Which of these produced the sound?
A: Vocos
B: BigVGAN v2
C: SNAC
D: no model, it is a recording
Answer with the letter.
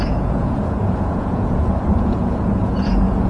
A